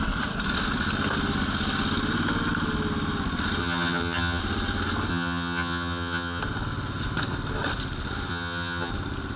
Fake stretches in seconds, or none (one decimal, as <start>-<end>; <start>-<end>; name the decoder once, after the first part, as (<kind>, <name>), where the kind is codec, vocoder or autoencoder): 3.6-4.4 (vocoder, HiFi-GAN); 5.1-6.4; 8.3-8.9